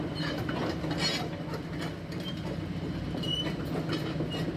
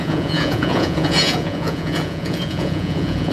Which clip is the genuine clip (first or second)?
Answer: first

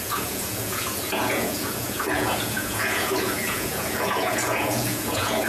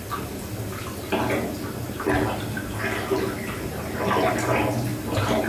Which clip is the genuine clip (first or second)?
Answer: second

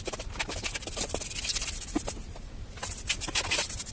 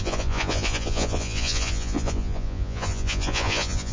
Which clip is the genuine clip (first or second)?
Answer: first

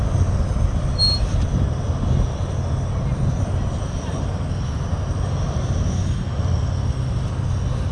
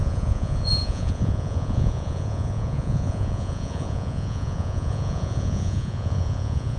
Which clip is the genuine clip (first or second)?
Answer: first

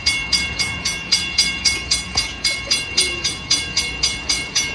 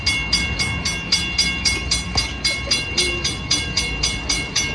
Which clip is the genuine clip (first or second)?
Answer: second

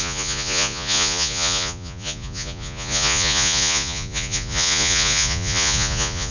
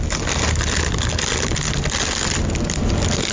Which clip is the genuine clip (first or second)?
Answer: second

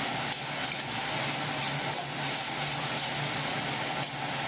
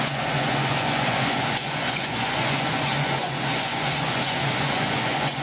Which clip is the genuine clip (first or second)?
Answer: first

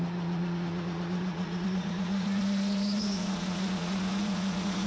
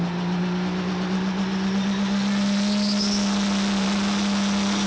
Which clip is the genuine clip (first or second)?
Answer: second